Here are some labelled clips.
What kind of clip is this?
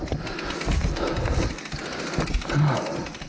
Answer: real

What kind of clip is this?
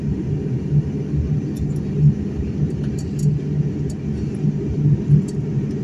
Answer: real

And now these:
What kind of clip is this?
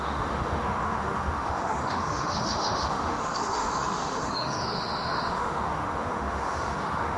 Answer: fake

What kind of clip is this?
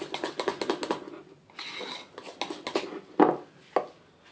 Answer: real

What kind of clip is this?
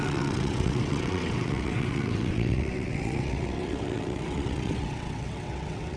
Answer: fake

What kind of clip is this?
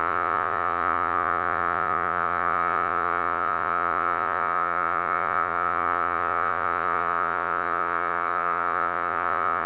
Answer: fake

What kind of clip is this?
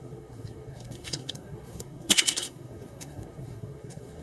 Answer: fake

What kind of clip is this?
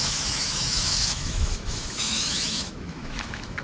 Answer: fake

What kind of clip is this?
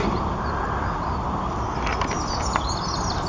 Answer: real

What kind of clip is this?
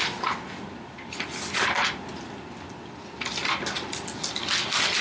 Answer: real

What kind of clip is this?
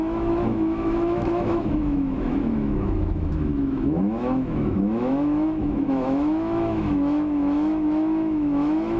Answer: fake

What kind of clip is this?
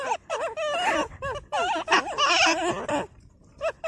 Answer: real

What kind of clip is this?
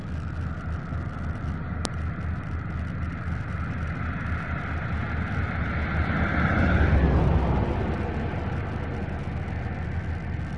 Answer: real